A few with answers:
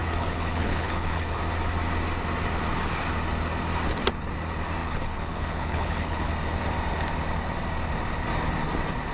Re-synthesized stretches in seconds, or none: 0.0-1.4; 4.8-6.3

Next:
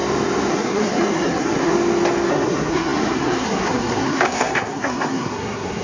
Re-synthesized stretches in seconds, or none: 0.5-1.7; 2.3-5.8

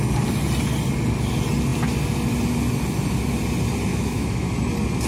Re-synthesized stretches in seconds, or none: 3.9-4.5